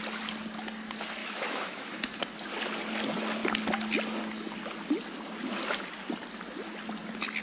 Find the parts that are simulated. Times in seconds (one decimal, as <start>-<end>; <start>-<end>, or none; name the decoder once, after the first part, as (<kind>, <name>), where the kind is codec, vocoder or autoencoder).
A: 1.2-2.2 (autoencoder, DAC-VAE)